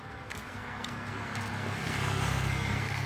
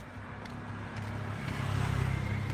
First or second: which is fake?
first